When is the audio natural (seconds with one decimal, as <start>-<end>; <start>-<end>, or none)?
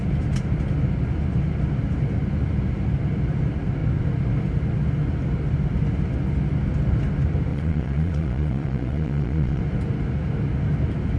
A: 0.0-7.5; 9.6-11.2